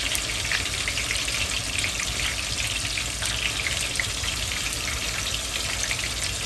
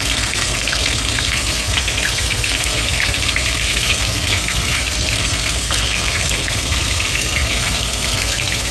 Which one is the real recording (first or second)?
first